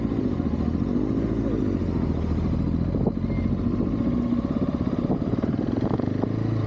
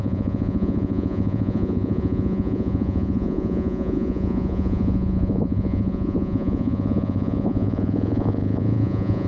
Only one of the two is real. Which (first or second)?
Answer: first